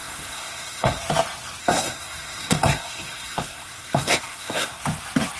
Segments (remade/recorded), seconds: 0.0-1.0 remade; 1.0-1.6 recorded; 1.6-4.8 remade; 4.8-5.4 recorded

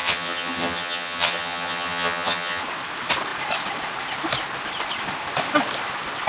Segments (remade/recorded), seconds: 0.0-2.6 remade; 2.6-6.3 recorded

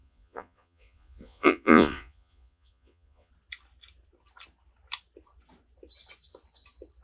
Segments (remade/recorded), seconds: 0.0-3.3 remade; 3.3-7.0 recorded

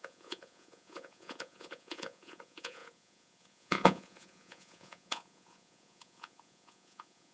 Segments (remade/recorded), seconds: 0.0-7.3 remade

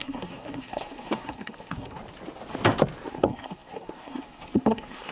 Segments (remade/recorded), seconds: 0.0-2.0 remade; 2.0-3.1 recorded; 3.1-5.1 remade

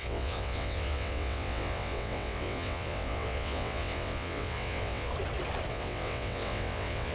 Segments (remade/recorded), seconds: 0.0-5.1 remade; 5.1-5.7 recorded; 5.7-7.1 remade

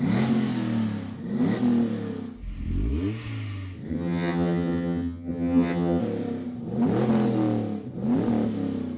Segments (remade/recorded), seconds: 0.0-3.9 recorded; 3.9-6.0 remade; 6.0-9.0 recorded

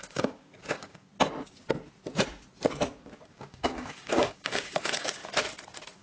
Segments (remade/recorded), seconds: 0.0-1.1 remade; 1.1-3.3 recorded; 3.3-5.2 remade; 5.2-6.0 recorded